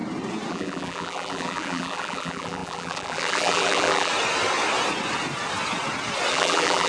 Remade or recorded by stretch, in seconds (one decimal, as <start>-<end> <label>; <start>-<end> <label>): 0.0-0.5 recorded; 0.5-4.1 remade; 4.1-6.3 recorded; 6.3-6.9 remade